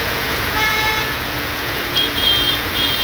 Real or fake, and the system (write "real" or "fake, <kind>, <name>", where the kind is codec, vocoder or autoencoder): fake, vocoder, Vocos